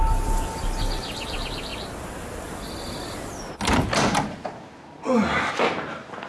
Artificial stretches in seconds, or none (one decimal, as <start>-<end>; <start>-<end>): none